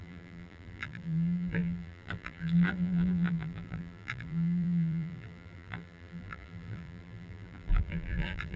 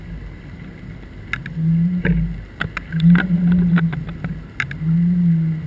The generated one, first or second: first